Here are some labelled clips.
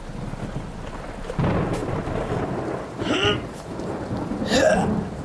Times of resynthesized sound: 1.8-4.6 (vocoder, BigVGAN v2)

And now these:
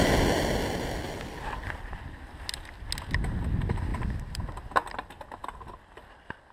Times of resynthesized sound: 3.9-4.4 (vocoder, BigVGAN v2)

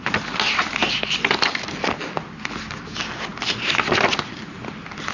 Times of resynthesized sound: none

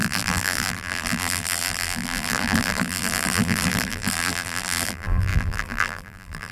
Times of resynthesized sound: 0.0-6.5 (vocoder, BigVGAN v2)